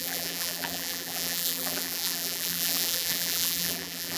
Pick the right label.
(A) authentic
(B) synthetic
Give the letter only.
B